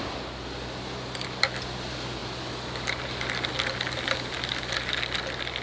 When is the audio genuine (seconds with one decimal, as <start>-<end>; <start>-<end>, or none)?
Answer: 0.0-5.6